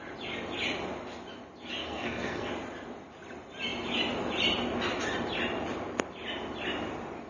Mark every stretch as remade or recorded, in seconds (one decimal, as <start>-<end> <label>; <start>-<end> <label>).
0.0-1.8 recorded; 1.8-2.5 remade; 2.5-7.3 recorded